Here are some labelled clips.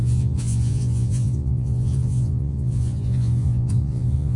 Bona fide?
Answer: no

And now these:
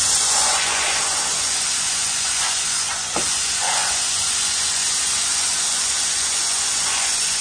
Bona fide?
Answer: no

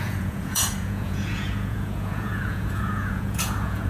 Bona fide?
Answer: no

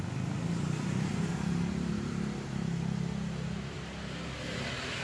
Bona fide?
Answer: yes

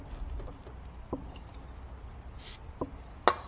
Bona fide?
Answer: yes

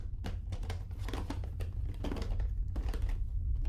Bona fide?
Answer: yes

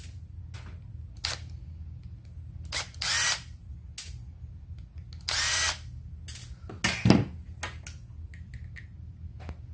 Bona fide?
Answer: yes